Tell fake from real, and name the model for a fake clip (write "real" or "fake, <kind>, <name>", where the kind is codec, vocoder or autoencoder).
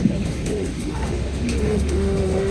fake, autoencoder, DAC-VAE